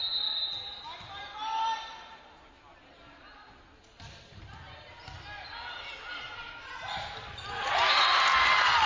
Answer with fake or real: real